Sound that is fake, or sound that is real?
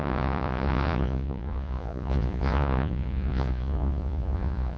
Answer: fake